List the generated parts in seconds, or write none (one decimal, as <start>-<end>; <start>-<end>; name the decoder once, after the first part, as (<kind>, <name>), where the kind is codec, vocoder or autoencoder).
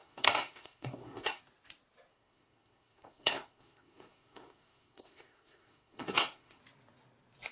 0.0-1.4 (codec, SNAC); 2.1-6.6